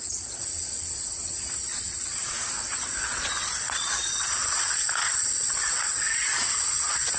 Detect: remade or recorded remade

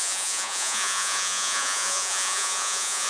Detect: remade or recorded remade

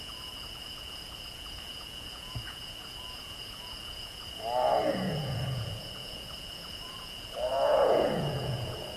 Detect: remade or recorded remade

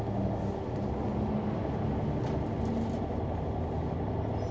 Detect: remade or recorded recorded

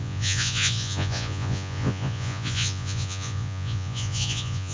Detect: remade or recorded remade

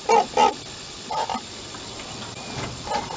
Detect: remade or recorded recorded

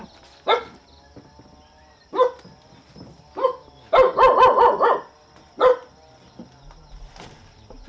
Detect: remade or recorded recorded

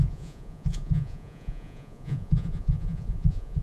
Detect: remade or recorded remade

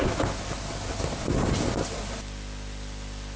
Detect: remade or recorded recorded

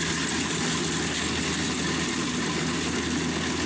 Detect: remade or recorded recorded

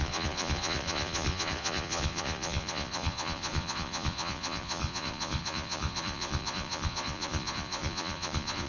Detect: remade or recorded remade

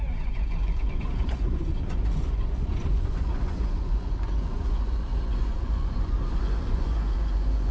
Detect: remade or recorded remade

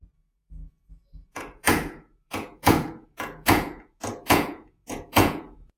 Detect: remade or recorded remade